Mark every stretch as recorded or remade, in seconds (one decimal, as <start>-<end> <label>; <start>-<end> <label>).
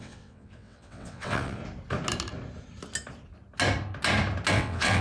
0.0-1.6 remade; 1.6-4.5 recorded; 4.5-5.0 remade